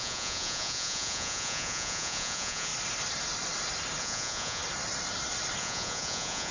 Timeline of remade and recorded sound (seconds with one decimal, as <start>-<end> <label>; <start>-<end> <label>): 0.0-2.7 remade; 2.7-4.0 recorded; 4.0-4.6 remade; 4.6-5.6 recorded; 5.6-6.5 remade